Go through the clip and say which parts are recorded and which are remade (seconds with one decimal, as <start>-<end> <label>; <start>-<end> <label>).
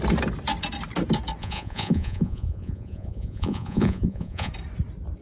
0.0-1.4 recorded; 1.4-4.5 remade; 4.5-5.2 recorded